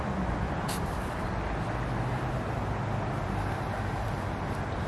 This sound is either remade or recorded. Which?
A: recorded